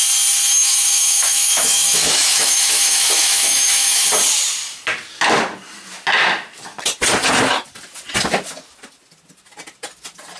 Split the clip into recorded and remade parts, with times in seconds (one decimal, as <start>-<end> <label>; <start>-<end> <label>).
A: 0.0-0.5 recorded; 0.5-4.1 remade; 4.1-10.4 recorded